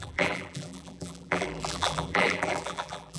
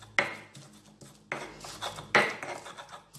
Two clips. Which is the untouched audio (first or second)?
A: second